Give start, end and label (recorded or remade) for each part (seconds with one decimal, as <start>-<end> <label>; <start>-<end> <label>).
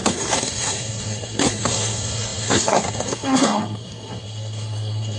0.0-5.2 remade